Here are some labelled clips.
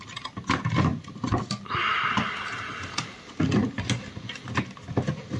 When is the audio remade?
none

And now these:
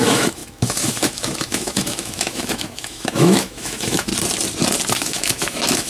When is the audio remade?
0.0-4.1 (autoencoder, DAC-VAE); 4.9-5.9

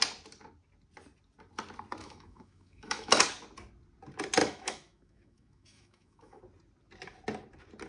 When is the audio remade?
2.0-3.2 (autoencoder, DAC-VAE); 4.4-6.4

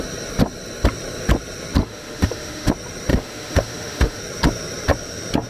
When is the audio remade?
1.8-2.7 (autoencoder, DAC-VAE); 3.1-4.2

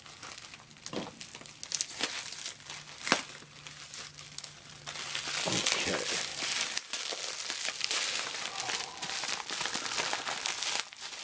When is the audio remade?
none